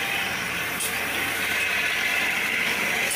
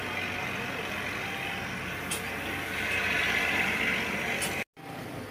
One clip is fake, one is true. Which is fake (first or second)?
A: first